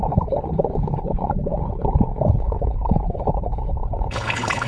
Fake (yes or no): yes